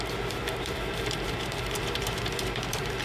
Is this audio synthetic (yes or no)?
yes